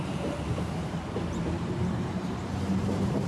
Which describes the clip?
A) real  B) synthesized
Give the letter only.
B